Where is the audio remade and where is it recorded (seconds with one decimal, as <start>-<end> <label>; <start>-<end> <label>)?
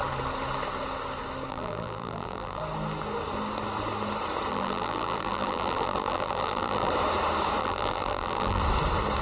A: 0.0-1.5 recorded; 1.5-2.6 remade; 2.6-4.5 recorded; 4.5-6.9 remade; 6.9-7.6 recorded; 7.6-8.6 remade; 8.6-9.2 recorded